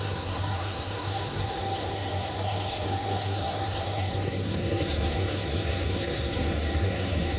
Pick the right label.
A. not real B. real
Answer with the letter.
A